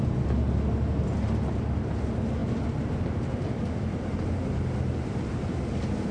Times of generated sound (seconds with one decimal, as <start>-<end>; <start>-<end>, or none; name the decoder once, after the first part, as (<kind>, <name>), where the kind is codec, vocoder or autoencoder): none